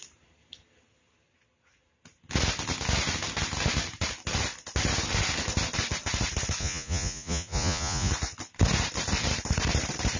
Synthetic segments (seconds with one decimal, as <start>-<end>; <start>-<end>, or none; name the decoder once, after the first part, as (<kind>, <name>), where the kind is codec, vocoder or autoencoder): 6.6-8.1 (vocoder, Vocos)